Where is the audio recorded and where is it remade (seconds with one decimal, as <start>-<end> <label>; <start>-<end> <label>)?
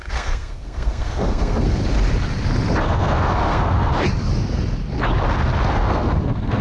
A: 0.0-1.8 remade; 1.8-2.8 recorded; 2.8-3.9 remade; 3.9-5.7 recorded; 5.7-6.6 remade